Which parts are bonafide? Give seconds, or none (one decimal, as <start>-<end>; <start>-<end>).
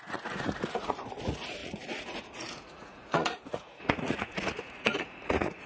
none